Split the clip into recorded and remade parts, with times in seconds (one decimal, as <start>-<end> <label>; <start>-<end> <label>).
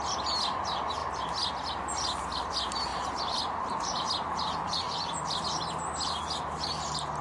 0.0-2.9 recorded; 2.9-6.7 remade; 6.7-7.2 recorded